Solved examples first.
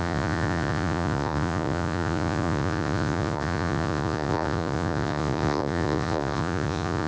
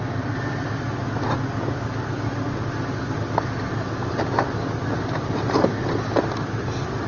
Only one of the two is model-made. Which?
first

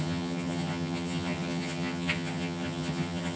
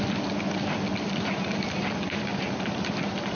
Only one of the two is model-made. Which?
first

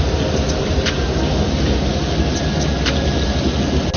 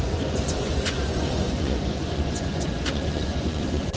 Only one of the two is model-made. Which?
second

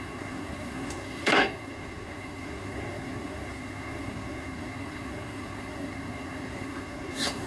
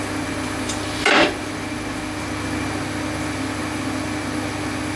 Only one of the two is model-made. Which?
first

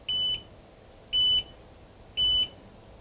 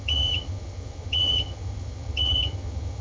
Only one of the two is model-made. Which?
second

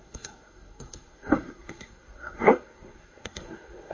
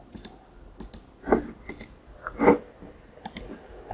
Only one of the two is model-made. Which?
first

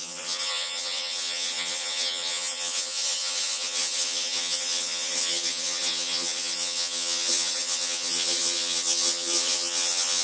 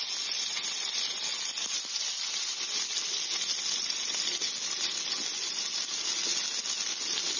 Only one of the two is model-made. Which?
first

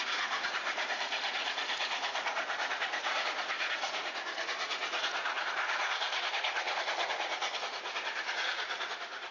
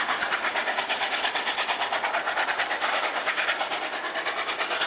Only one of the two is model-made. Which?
first